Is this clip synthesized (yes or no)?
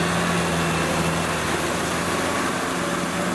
no